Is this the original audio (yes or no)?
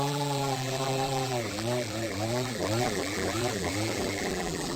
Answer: no